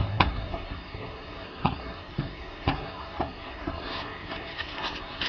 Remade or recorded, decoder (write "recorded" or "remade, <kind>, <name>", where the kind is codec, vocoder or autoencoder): remade, codec, SNAC